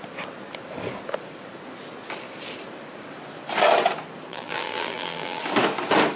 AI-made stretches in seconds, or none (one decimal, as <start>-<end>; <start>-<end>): 4.3-5.4